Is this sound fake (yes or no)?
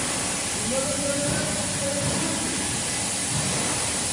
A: no